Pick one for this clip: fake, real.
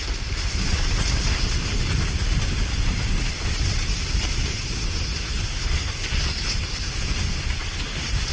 real